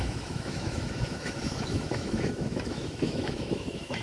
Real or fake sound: fake